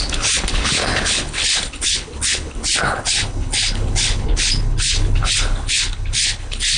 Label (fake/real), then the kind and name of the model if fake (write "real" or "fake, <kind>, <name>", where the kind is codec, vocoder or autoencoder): fake, codec, HILCodec